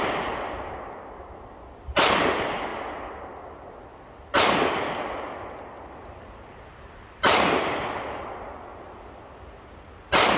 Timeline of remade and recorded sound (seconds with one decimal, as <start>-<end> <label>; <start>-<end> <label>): 0.0-10.4 recorded